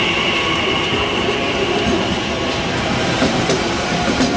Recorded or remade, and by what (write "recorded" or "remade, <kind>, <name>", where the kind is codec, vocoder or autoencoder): remade, vocoder, BigVGAN v2